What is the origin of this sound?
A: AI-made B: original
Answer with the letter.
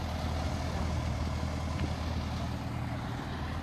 B